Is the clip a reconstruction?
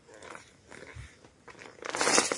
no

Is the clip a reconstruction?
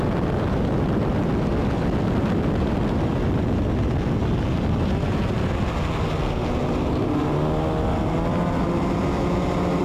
no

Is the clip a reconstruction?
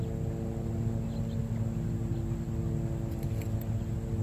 no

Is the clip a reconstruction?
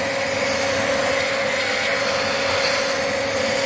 no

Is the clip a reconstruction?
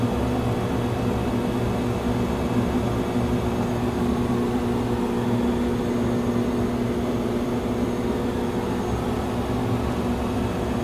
no